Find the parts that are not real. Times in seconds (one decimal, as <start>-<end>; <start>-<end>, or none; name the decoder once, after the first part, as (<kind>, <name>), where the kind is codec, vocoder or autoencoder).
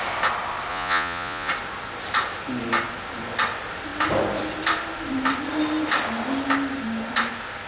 0.7-1.5 (vocoder, Vocos)